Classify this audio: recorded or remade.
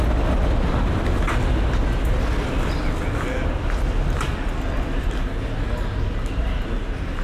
recorded